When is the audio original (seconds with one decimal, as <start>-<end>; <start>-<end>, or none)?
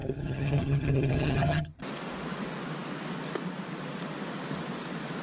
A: 1.8-5.2